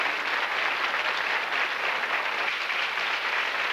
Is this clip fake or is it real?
real